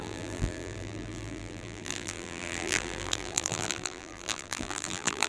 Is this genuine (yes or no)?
no